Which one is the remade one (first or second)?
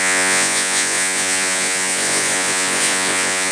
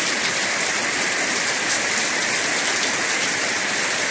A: first